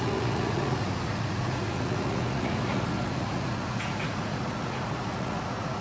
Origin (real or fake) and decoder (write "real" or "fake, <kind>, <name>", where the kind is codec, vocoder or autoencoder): fake, vocoder, Vocos